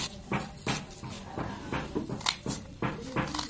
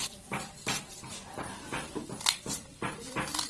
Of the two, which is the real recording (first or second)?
first